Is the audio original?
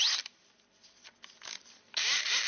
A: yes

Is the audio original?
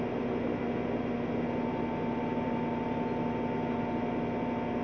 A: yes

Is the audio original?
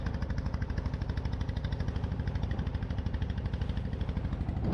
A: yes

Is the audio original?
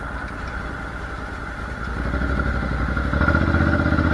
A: yes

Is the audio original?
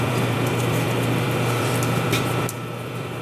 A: no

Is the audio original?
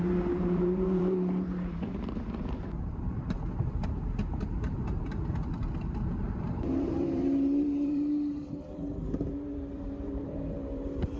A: no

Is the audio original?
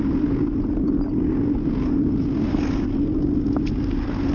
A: yes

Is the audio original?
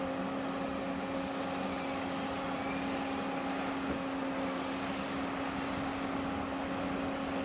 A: yes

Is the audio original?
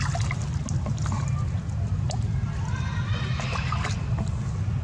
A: yes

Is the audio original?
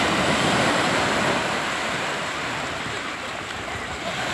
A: no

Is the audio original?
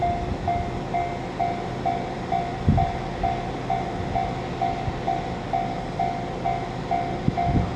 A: yes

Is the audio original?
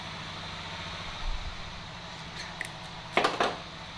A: yes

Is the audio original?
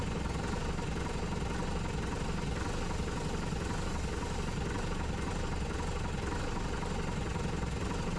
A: yes